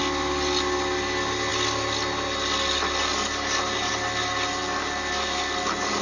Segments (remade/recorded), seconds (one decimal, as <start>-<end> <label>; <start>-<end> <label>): 0.0-6.0 recorded